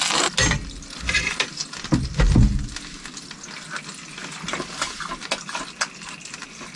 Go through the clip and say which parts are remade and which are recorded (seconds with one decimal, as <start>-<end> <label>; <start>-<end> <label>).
0.0-6.8 recorded